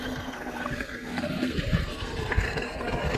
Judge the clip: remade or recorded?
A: remade